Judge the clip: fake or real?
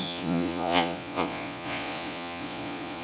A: fake